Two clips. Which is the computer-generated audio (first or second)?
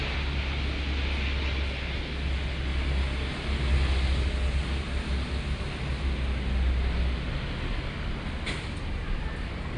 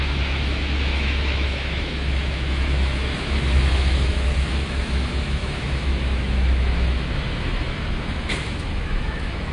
second